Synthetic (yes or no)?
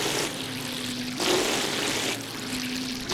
no